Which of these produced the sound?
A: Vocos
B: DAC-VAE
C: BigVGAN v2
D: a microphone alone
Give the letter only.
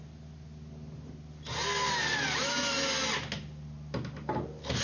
D